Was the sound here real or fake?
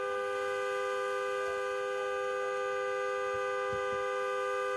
real